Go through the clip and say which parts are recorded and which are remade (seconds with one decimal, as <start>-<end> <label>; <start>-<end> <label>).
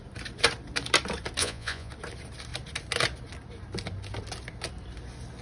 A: 0.0-1.4 recorded; 1.4-1.9 remade; 1.9-5.4 recorded